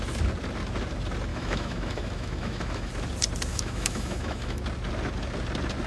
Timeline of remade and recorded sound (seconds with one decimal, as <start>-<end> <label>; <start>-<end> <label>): 0.0-1.3 recorded; 1.3-2.9 remade; 2.9-3.5 recorded; 3.5-4.6 remade; 4.6-5.9 recorded